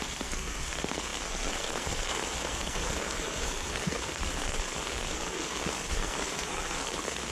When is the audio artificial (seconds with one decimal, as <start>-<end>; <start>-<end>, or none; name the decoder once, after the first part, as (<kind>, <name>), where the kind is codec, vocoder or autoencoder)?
0.0-7.3 (codec, SNAC)